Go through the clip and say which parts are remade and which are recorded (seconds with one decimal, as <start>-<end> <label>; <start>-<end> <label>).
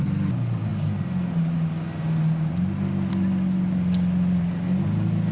0.0-5.3 recorded